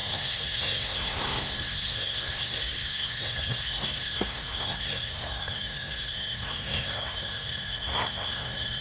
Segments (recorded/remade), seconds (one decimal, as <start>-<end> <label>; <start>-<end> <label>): 0.0-8.8 remade